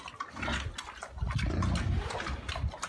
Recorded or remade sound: recorded